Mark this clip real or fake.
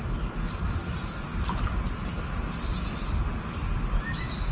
real